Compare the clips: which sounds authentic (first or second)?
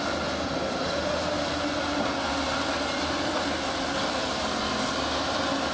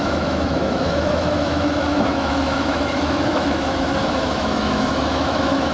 first